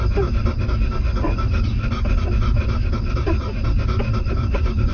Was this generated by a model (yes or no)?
no